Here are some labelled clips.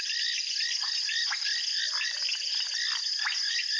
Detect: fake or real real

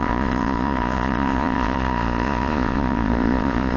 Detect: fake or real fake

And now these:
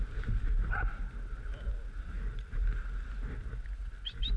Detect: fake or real real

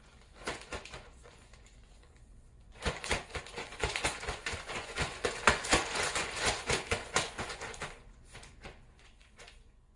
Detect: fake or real fake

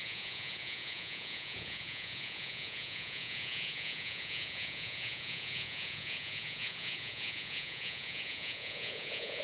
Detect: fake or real fake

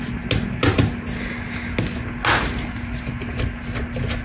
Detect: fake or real real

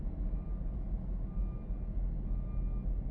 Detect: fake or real real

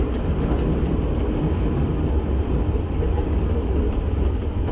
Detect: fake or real real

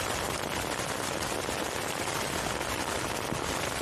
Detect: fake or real real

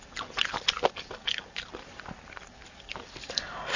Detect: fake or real real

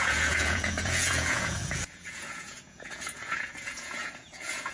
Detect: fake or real fake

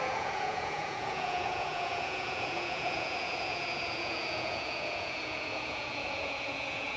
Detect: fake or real fake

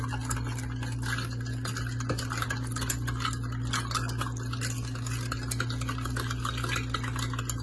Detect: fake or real real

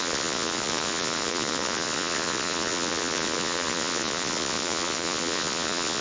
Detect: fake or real fake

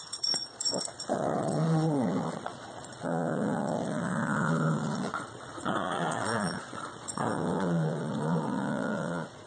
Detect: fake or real fake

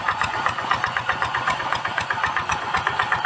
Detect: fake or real fake